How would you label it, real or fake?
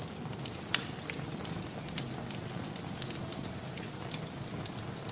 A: real